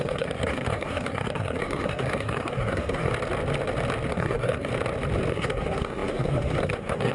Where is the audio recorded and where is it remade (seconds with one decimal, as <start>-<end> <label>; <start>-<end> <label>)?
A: 0.0-3.1 remade; 3.1-4.1 recorded; 4.1-4.7 remade; 4.7-5.3 recorded; 5.3-7.1 remade